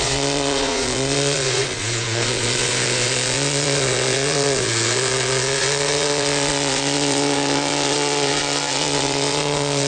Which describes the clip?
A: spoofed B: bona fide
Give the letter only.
A